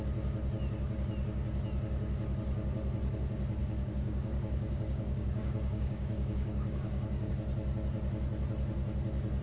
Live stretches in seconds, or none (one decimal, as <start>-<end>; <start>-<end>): 0.0-3.6; 7.3-9.4